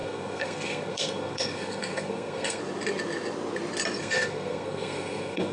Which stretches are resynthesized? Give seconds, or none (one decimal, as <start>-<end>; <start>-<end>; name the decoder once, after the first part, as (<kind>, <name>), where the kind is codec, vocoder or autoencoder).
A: 0.0-2.6 (codec, SNAC); 4.0-5.5